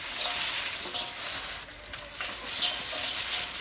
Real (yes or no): yes